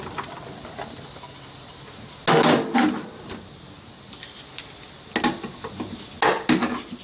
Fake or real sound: real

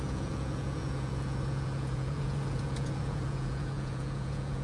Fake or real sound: fake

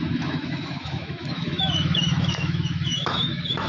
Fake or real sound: fake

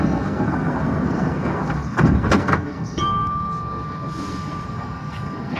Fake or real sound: fake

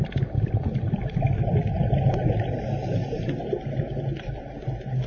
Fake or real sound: real